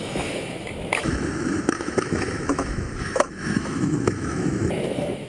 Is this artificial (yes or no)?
yes